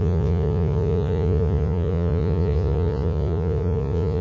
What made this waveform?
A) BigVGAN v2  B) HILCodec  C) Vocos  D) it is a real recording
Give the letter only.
C